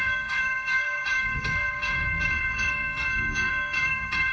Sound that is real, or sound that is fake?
fake